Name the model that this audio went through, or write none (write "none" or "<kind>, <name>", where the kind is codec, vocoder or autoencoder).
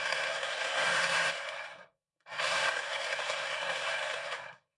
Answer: codec, SNAC